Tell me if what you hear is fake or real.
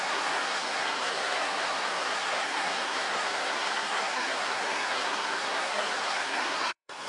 fake